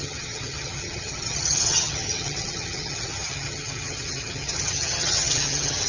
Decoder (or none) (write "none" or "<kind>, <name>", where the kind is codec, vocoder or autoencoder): vocoder, HiFi-GAN